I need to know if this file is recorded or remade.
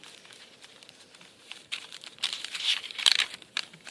remade